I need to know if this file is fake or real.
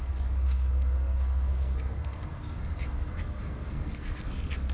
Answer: fake